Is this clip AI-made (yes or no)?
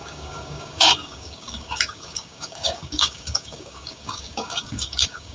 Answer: yes